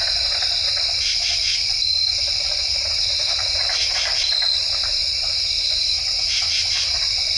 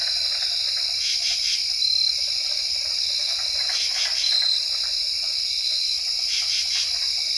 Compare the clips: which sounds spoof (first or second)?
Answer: first